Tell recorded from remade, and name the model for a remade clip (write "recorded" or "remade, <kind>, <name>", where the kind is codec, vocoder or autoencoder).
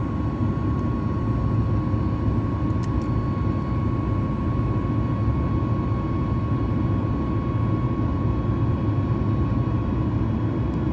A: recorded